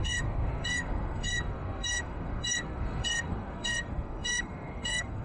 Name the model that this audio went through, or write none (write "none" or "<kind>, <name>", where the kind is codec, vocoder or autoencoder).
codec, SNAC